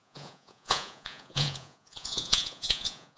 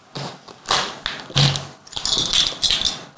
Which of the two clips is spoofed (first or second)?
first